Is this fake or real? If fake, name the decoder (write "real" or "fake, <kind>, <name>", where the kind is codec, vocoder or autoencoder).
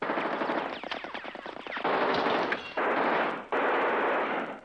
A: real